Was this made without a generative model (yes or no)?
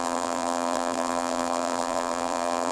no